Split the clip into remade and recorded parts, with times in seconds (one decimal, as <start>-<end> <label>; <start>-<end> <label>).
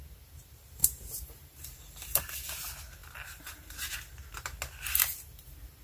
0.0-0.8 recorded; 0.8-2.2 remade; 2.2-3.0 recorded; 3.0-3.8 remade; 3.8-5.8 recorded